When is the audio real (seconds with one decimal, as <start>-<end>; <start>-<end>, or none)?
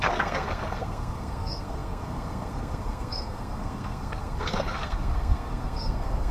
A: none